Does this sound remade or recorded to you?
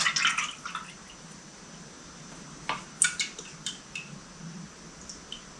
recorded